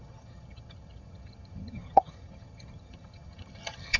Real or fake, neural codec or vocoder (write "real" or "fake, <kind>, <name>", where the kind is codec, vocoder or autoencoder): fake, vocoder, HiFi-GAN